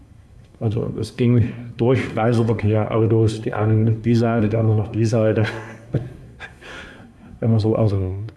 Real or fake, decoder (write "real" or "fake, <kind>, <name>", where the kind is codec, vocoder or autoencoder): fake, codec, SNAC